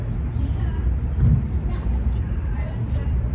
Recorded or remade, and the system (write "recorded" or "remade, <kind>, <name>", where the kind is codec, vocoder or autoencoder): recorded